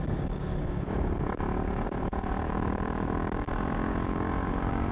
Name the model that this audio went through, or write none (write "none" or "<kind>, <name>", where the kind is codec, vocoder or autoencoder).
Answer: codec, DAC